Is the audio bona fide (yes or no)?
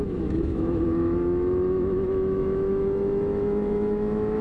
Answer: no